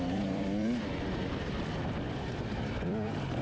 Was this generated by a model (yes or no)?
yes